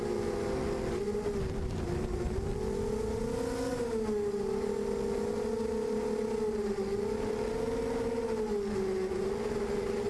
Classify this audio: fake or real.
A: real